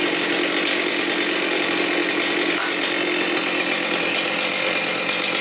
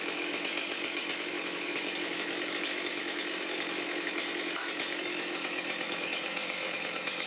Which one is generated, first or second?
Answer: second